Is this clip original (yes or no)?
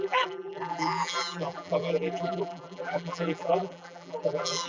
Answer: no